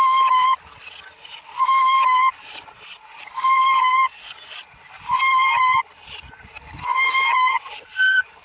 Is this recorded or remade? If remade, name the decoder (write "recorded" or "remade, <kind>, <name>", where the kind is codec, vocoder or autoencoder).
recorded